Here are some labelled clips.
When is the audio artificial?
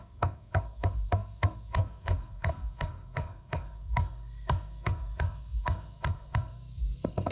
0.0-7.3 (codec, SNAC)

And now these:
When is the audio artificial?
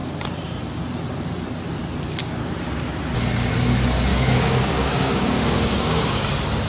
4.1-6.3 (codec, DAC)